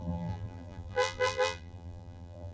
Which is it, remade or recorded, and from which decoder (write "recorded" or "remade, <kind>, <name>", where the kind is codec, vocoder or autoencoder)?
remade, vocoder, BigVGAN v2